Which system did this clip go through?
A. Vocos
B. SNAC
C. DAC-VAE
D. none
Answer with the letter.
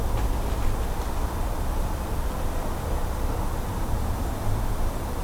D